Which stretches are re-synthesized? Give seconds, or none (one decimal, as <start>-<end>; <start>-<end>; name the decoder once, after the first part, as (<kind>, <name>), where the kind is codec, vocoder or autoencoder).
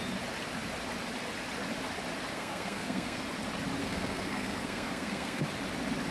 2.3-3.2 (codec, SNAC); 3.8-5.4